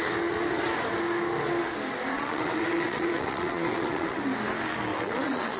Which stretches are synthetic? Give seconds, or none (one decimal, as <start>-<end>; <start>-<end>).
2.1-4.2; 4.9-5.6